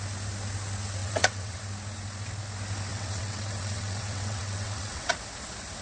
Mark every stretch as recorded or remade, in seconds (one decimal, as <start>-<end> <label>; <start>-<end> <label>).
0.0-1.0 recorded; 1.0-1.6 remade; 1.6-2.9 recorded; 2.9-5.1 remade; 5.1-5.8 recorded